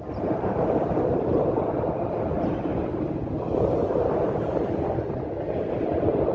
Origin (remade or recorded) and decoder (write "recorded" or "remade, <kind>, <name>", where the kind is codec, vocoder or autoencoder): recorded